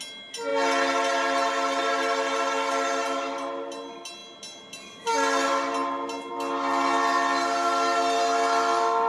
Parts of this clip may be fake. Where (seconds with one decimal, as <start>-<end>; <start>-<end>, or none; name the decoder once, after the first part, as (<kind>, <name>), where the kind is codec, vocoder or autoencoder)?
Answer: none